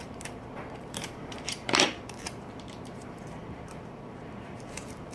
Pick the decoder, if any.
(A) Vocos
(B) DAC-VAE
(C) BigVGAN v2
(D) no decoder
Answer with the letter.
C